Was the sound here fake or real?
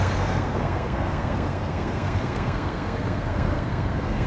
fake